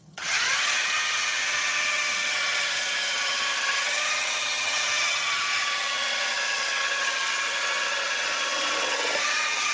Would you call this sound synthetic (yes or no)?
yes